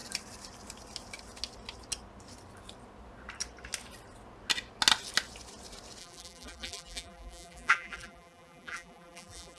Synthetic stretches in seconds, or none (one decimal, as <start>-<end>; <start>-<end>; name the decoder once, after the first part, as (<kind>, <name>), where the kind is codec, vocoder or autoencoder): 6.0-9.6 (vocoder, BigVGAN v2)